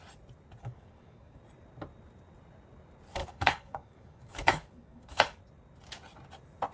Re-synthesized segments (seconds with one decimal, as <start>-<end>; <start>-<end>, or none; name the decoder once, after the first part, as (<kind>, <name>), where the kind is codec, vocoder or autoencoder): 0.6-1.4 (codec, DAC); 3.2-5.4